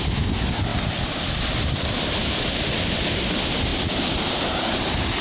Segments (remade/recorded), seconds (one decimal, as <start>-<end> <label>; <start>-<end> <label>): 0.0-0.7 recorded; 0.7-2.4 remade; 2.4-5.2 recorded